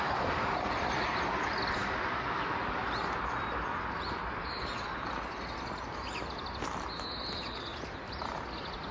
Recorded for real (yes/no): yes